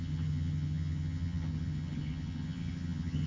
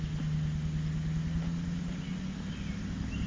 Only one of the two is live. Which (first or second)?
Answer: second